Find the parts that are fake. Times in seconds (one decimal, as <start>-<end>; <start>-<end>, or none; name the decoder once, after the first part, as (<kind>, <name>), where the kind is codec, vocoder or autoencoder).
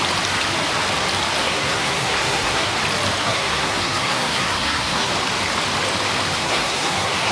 1.4-2.7 (codec, SNAC); 3.2-5.1; 6.4-7.3